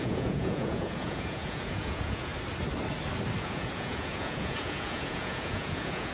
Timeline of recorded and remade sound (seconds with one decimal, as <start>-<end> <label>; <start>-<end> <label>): 0.0-2.3 remade; 2.3-3.4 recorded; 3.4-6.1 remade